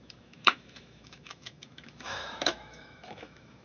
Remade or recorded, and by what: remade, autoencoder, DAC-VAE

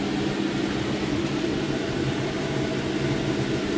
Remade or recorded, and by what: recorded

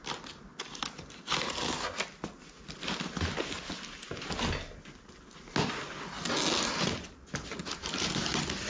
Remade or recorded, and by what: recorded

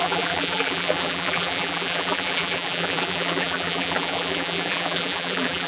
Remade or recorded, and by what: remade, vocoder, BigVGAN v2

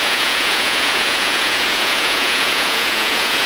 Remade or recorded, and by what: remade, vocoder, Vocos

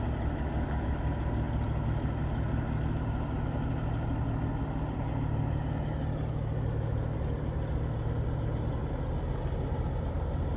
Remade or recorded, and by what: recorded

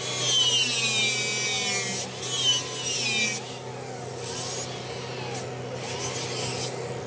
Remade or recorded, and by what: recorded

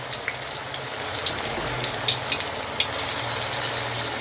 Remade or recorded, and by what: recorded